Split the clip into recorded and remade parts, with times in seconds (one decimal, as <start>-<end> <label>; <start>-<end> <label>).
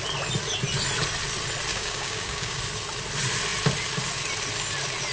0.0-1.7 recorded; 1.7-2.6 remade; 2.6-5.1 recorded